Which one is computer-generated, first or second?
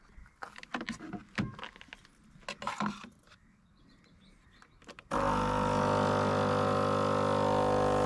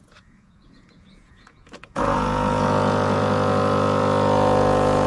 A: second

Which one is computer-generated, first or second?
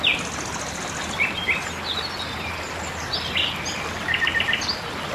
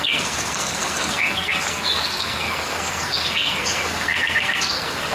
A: second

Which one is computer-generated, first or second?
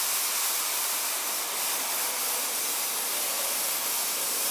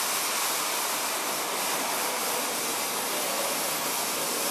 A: first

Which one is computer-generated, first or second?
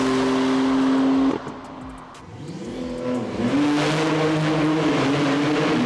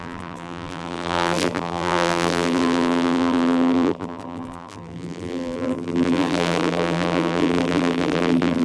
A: second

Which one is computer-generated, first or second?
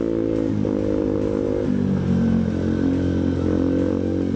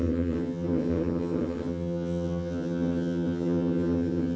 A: second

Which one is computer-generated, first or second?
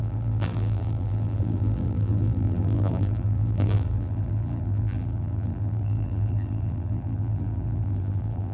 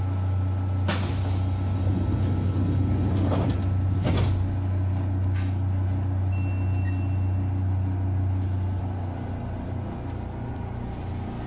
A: first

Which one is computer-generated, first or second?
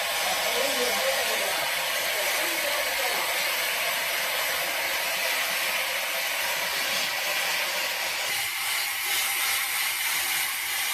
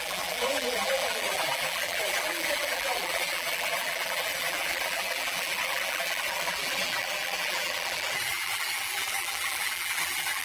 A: second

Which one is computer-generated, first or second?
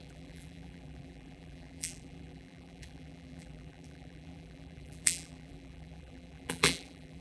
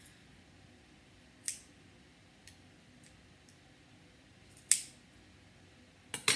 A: first